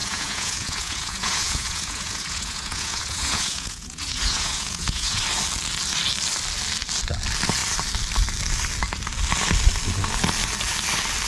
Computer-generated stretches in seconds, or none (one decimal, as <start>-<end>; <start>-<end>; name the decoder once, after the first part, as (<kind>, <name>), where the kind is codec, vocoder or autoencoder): 0.0-5.2 (vocoder, Vocos)